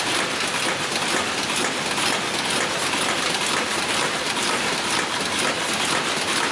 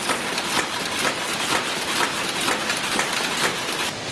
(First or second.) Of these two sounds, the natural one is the first